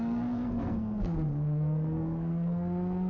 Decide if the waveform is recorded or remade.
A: remade